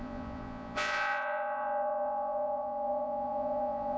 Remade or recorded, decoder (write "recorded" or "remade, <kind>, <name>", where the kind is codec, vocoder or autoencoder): remade, vocoder, Vocos